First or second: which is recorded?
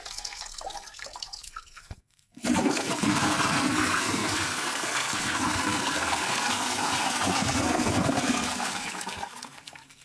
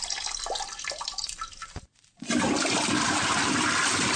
second